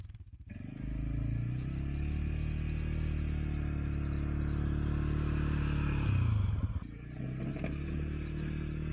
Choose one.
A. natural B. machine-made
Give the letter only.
A